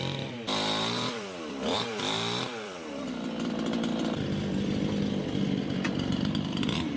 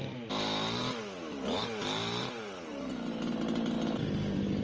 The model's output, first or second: first